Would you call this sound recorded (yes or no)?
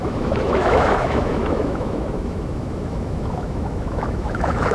no